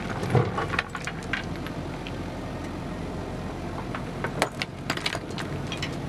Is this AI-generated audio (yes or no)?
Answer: no